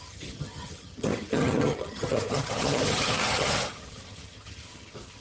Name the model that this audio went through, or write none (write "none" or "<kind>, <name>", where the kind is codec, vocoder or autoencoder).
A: vocoder, HiFi-GAN